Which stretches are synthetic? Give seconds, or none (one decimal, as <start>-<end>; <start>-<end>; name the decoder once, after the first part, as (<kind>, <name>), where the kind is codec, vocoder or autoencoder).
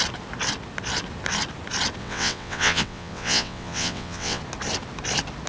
2.0-4.4 (vocoder, WaveNeXt)